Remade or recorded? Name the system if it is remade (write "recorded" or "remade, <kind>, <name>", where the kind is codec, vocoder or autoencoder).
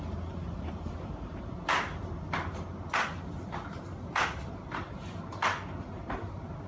recorded